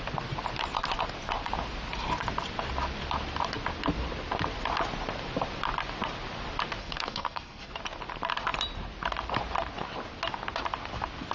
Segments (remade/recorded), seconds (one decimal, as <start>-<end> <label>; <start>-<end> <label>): 0.0-6.8 recorded; 6.8-7.7 remade; 7.7-11.3 recorded